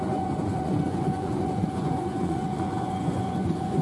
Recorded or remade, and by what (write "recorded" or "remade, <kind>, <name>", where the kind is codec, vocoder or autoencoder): remade, vocoder, Vocos